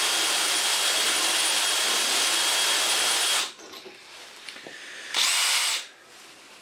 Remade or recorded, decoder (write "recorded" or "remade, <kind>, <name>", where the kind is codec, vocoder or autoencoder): remade, vocoder, BigVGAN v2